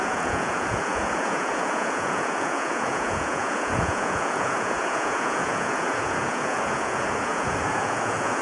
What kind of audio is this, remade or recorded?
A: remade